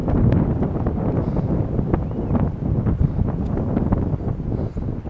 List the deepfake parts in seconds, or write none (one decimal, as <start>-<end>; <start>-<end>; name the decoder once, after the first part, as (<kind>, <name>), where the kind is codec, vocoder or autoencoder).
none